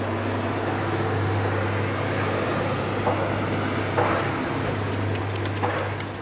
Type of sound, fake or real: real